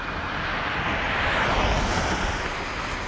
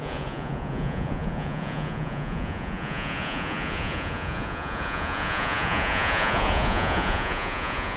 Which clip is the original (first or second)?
first